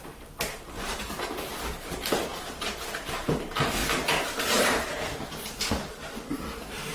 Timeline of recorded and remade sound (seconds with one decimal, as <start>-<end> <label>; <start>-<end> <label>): 0.0-2.3 remade; 2.3-3.0 recorded; 3.0-3.8 remade; 3.8-4.6 recorded; 4.6-6.9 remade